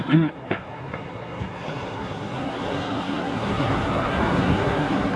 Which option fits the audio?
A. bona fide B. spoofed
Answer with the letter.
B